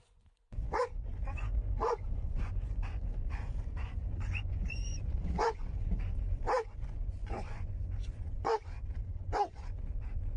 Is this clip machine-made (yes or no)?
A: yes